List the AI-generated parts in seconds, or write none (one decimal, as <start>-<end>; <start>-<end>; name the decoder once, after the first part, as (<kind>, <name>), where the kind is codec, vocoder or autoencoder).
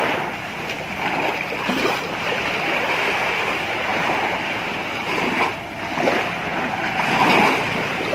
3.9-5.4 (vocoder, BigVGAN v2)